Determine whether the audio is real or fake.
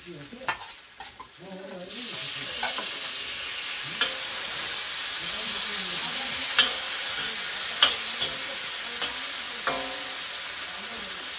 real